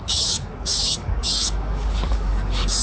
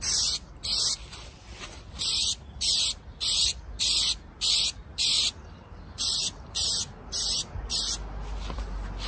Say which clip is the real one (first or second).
second